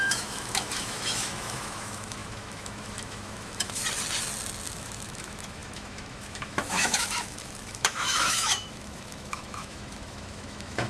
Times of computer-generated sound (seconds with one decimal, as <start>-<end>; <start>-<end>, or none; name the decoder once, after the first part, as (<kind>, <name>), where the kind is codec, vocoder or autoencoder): 0.0-3.8 (autoencoder, DAC-VAE); 4.7-10.9